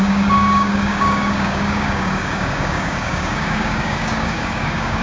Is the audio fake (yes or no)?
yes